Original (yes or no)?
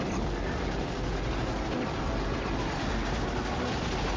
yes